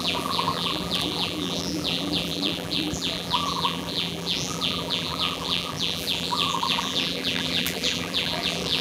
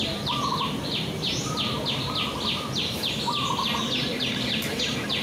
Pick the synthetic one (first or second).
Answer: first